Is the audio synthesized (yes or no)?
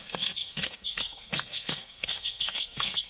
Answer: yes